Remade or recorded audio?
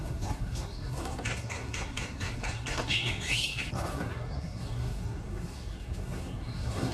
remade